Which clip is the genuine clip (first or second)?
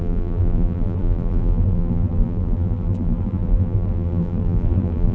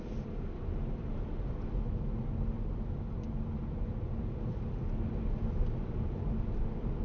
second